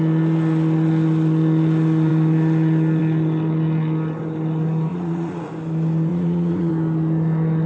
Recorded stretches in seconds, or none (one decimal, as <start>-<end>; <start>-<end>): 0.0-4.9; 5.5-6.1; 6.7-7.7